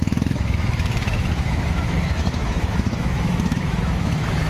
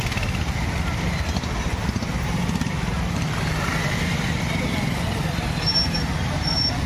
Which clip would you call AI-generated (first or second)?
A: first